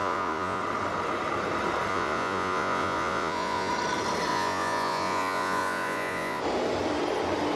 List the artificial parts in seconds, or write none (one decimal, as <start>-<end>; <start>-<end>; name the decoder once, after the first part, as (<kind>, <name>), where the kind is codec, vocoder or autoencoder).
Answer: 0.0-0.6 (vocoder, Vocos); 1.9-3.7; 4.3-6.4